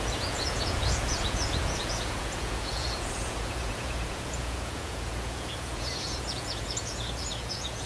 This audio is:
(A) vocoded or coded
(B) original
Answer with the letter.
A